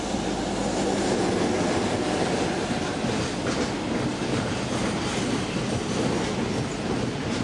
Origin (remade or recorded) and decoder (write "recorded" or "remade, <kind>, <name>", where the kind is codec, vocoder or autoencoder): recorded